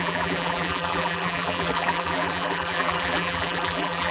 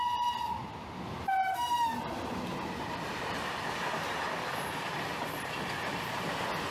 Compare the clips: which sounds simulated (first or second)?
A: first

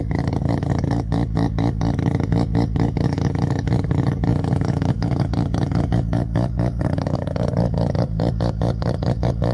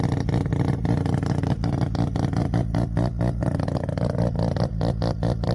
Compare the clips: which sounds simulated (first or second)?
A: first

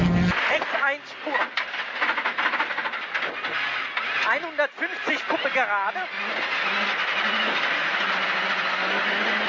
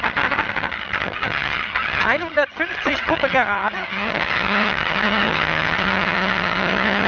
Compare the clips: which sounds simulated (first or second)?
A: second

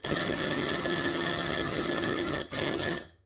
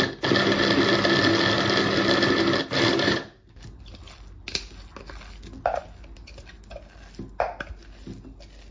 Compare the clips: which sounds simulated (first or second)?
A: first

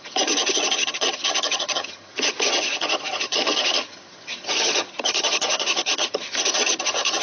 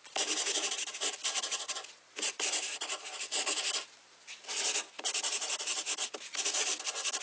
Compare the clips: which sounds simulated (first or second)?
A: first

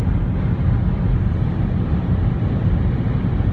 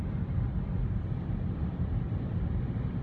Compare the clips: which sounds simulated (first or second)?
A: second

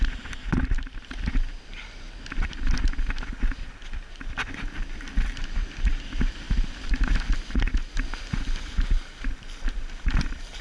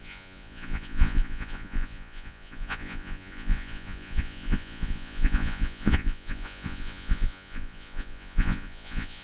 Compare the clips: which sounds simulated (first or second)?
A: second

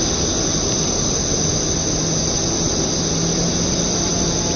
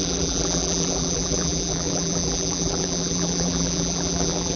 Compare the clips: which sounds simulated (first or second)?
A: second